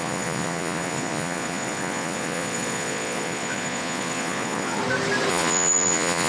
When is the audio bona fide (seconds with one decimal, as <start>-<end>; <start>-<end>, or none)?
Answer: 4.8-5.3